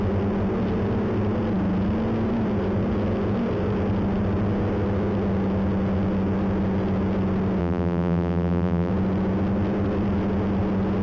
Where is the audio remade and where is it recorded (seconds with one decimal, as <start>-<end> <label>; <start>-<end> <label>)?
0.0-7.6 recorded; 7.6-8.9 remade; 8.9-11.0 recorded